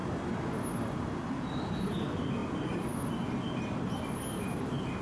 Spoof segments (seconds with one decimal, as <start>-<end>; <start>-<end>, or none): none